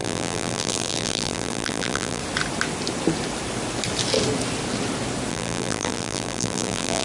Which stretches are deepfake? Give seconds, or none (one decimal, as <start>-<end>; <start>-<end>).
0.0-2.2; 5.3-7.0